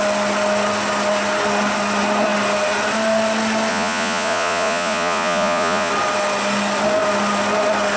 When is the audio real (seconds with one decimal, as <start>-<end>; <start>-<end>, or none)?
0.0-3.7; 5.9-8.0